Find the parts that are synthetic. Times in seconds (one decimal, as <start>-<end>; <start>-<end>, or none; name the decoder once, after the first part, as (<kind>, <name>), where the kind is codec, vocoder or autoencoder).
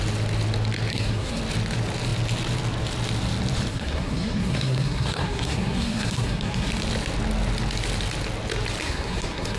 0.9-1.4 (codec, SNAC); 3.7-6.7; 8.8-9.6